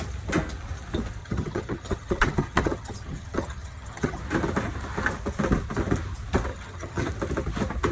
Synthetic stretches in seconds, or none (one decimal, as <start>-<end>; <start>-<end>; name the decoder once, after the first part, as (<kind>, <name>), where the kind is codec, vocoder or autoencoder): 1.2-4.2 (vocoder, HiFi-GAN); 6.5-7.1